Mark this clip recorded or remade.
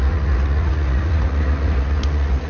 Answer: remade